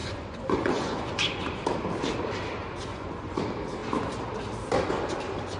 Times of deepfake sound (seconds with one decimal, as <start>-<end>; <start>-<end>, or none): 0.0-1.6; 2.9-3.4